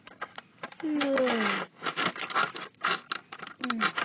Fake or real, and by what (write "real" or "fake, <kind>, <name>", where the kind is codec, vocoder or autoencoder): real